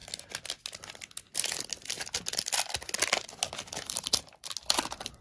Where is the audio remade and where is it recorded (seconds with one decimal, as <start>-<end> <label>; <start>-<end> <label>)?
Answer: 0.0-5.2 recorded